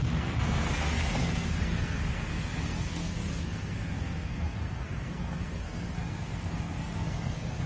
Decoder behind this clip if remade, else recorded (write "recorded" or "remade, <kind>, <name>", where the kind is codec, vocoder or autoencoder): remade, codec, SNAC